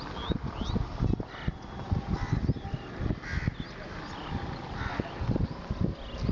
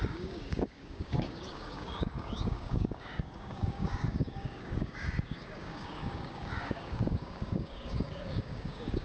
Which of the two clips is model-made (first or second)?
second